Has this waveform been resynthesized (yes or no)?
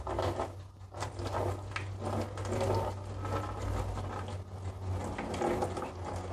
no